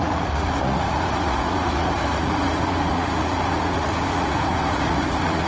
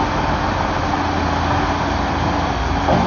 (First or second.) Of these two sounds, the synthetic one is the first